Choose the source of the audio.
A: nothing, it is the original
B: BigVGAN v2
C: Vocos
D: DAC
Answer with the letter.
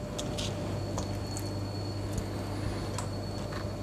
A